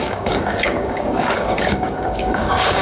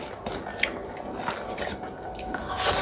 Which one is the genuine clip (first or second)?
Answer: second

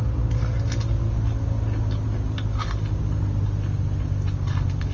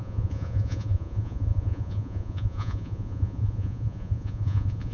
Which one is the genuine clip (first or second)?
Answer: first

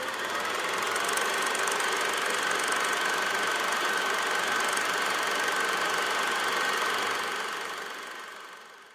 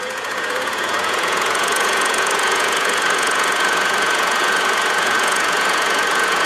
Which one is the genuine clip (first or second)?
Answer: first